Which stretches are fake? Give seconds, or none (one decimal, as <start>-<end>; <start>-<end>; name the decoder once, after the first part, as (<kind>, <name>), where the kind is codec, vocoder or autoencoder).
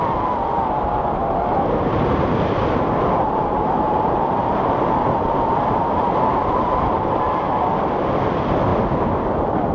3.0-6.9 (vocoder, BigVGAN v2)